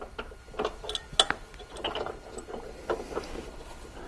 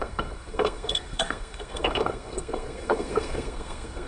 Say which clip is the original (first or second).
first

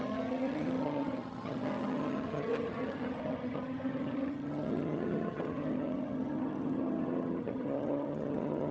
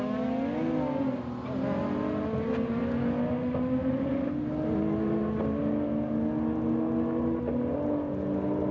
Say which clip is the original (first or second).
second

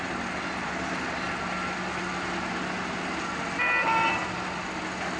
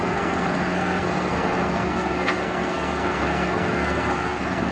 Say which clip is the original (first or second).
first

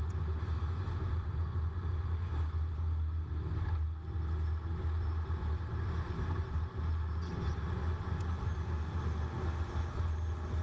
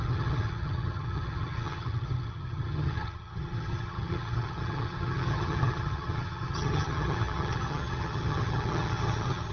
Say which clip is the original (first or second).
first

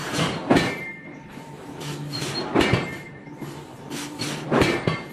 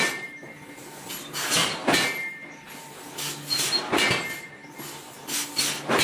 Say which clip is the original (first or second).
second